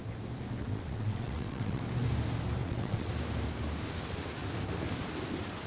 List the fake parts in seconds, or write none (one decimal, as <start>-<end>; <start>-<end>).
0.6-1.8; 2.6-3.1